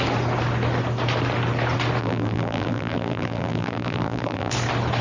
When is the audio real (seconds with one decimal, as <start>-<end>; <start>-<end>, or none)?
0.0-2.0; 4.5-5.0